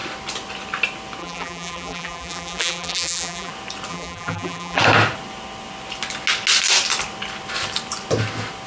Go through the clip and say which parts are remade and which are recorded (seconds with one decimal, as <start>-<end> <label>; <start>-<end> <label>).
0.0-1.2 recorded; 1.2-3.5 remade; 3.5-3.9 recorded; 3.9-4.8 remade; 4.8-8.7 recorded